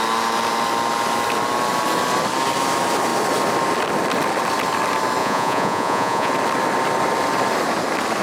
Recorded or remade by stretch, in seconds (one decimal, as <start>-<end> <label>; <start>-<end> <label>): 0.0-5.2 recorded; 5.2-6.3 remade; 6.3-8.2 recorded